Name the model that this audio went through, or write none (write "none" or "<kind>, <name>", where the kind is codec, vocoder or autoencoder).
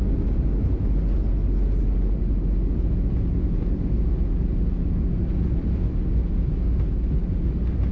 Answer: none